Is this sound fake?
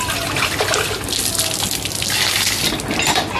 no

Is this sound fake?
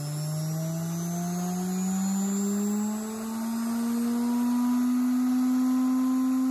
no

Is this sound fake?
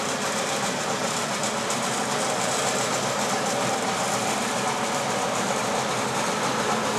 yes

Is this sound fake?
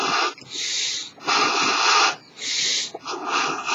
no